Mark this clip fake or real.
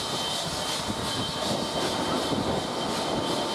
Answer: real